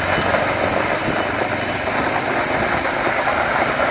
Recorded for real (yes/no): yes